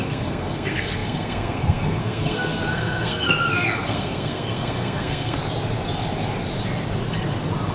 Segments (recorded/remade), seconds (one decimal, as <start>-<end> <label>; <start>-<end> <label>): 0.0-5.4 remade; 5.4-7.7 recorded